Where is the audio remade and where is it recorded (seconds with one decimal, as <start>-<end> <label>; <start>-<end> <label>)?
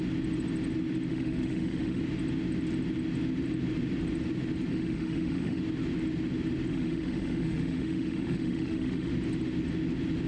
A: 0.0-1.1 recorded; 1.1-2.0 remade; 2.0-4.7 recorded; 4.7-5.6 remade; 5.6-6.7 recorded; 6.7-9.1 remade; 9.1-10.3 recorded